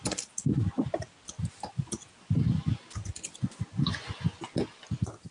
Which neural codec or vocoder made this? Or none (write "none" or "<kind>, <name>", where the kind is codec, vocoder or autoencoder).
none